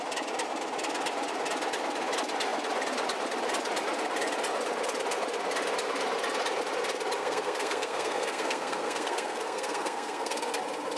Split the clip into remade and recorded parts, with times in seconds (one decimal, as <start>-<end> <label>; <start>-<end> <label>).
0.0-7.2 recorded; 7.2-10.6 remade; 10.6-11.0 recorded